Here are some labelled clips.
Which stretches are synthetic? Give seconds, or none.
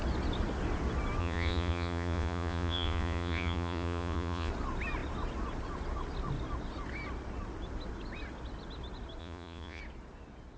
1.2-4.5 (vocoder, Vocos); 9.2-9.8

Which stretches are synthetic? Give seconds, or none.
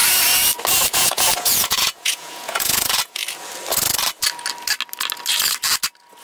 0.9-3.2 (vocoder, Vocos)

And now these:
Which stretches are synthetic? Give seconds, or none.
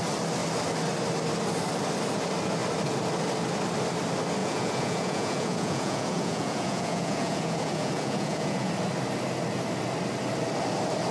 4.4-8.7 (vocoder, Vocos)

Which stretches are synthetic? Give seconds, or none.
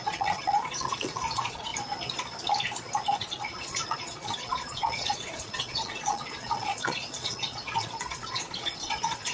0.0-1.7 (vocoder, Vocos); 3.2-9.3